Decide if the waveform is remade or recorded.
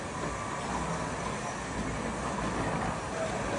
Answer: recorded